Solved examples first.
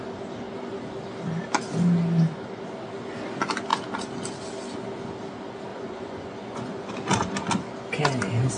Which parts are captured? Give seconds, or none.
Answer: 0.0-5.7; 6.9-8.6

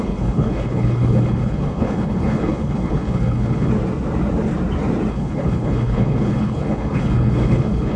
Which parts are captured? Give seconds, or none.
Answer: 3.7-5.1

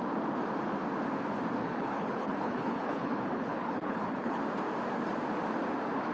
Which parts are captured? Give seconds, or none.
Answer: 0.0-1.6; 4.4-6.1

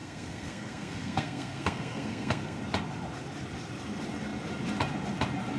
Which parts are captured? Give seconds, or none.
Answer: 2.6-5.6

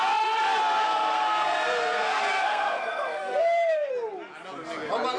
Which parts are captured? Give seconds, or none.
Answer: 0.0-0.8; 3.9-5.2

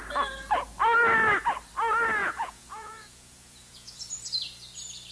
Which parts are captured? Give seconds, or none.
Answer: 0.0-2.2; 4.0-5.1

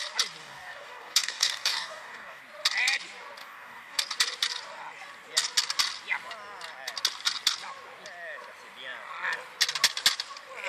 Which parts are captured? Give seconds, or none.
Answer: 0.0-0.4; 2.4-3.4; 4.0-10.7

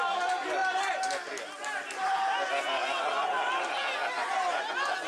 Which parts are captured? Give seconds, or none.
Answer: 0.0-5.1